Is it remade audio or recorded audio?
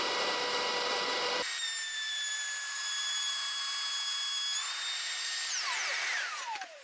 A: remade